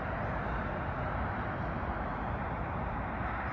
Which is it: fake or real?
real